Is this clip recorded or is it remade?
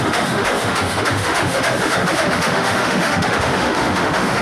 remade